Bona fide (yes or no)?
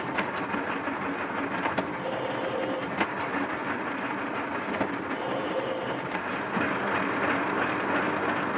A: yes